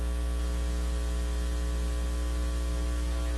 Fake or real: real